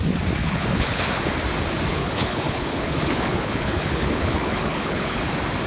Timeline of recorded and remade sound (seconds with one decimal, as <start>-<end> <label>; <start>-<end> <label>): 0.0-0.4 recorded; 0.4-1.2 remade; 1.2-1.9 recorded; 1.9-5.3 remade; 5.3-5.7 recorded